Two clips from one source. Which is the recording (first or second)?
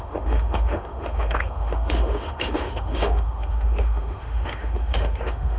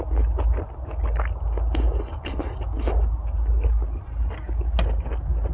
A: second